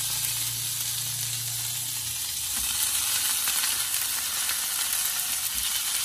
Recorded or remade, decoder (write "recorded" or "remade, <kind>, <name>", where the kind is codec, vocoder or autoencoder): recorded